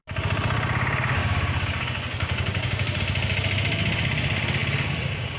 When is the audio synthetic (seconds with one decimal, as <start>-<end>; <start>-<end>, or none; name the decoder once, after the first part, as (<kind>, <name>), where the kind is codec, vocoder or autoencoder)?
1.2-3.0 (codec, DAC)